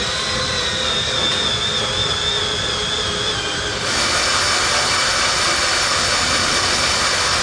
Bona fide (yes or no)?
yes